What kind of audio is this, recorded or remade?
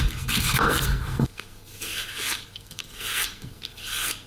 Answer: remade